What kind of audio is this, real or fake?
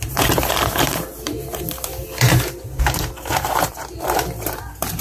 fake